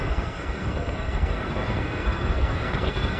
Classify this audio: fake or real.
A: fake